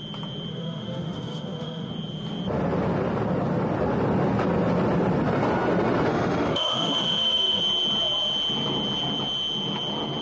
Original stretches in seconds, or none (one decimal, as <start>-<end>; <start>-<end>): 0.0-0.5; 1.9-6.1; 7.6-10.2